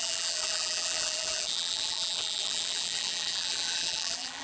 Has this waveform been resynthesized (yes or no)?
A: yes